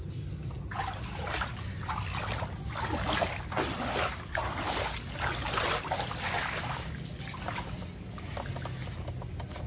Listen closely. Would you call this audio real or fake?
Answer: real